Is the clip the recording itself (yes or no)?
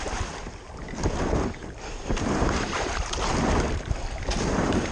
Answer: no